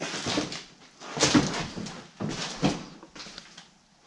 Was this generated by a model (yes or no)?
no